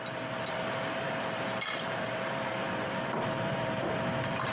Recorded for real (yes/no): no